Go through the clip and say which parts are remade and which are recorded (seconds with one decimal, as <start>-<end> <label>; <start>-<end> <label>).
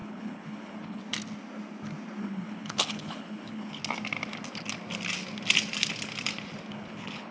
0.0-1.0 remade; 1.0-2.2 recorded; 2.2-3.8 remade; 3.8-6.7 recorded; 6.7-7.3 remade